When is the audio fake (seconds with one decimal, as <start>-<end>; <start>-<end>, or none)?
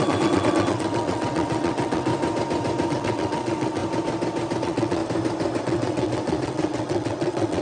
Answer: 0.0-2.1; 2.9-3.8; 4.6-5.0; 5.6-7.6